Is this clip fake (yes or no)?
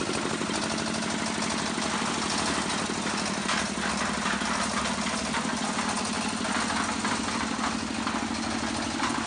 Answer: no